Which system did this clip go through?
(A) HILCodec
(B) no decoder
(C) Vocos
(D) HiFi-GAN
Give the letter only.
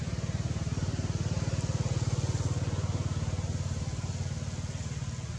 B